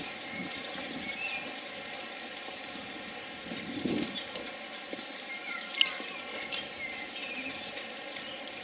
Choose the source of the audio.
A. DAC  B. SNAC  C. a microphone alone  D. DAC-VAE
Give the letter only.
C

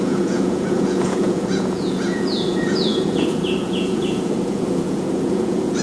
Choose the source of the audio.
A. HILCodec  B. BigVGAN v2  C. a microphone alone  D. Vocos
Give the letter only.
D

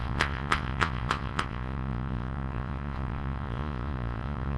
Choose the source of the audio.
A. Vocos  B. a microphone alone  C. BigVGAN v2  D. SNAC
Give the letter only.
A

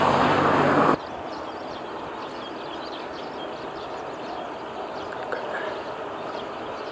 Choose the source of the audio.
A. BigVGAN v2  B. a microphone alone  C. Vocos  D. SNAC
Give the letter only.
B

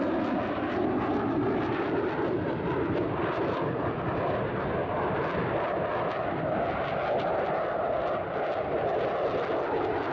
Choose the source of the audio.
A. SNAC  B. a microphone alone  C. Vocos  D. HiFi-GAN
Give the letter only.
B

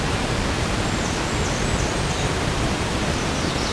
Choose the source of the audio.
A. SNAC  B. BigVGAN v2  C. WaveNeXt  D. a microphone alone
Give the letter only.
D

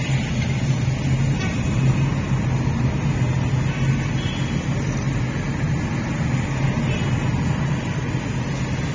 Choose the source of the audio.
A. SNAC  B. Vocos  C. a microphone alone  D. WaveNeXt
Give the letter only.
C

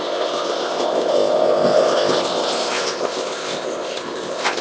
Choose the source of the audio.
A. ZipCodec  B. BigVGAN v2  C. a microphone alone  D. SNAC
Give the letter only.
A